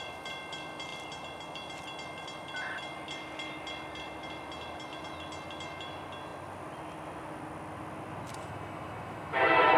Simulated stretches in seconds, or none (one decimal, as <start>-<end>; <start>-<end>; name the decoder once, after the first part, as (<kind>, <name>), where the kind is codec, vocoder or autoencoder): 8.3-9.8 (autoencoder, DAC-VAE)

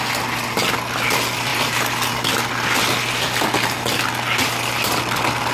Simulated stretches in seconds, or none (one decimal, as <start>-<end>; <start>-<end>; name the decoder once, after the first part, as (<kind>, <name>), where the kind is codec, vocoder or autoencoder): 1.5-2.5 (vocoder, BigVGAN v2)

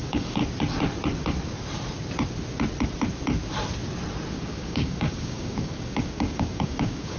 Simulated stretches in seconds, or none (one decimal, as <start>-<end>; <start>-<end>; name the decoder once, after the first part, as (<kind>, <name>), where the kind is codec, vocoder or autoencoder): 0.0-0.4 (codec, DAC); 4.3-7.2